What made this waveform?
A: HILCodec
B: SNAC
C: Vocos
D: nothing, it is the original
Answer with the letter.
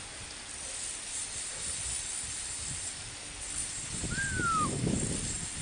D